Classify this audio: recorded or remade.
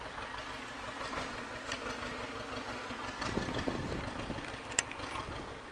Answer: recorded